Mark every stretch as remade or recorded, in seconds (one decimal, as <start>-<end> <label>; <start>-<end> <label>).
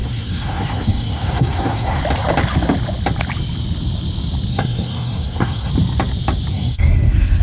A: 0.0-2.0 remade; 2.0-4.5 recorded; 4.5-5.7 remade; 5.7-6.5 recorded; 6.5-7.4 remade